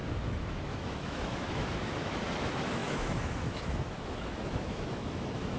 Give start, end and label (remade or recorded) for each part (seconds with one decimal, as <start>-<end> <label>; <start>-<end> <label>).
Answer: 0.0-5.6 remade